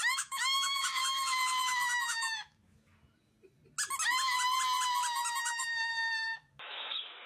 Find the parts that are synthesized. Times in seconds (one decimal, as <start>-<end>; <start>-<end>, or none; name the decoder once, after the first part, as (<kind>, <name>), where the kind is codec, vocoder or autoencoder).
0.0-2.9 (autoencoder, DAC-VAE); 5.4-7.3